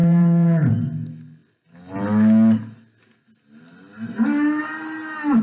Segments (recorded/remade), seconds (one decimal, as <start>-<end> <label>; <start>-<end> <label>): 0.0-0.7 remade; 0.7-5.4 recorded